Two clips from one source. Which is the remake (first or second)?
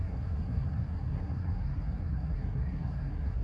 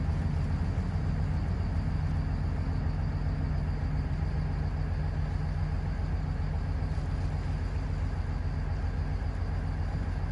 first